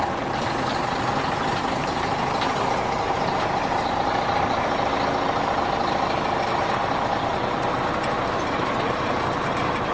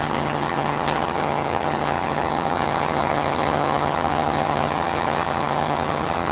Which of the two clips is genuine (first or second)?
first